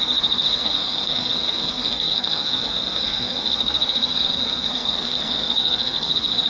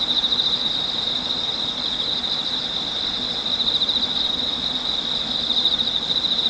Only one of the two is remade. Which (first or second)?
first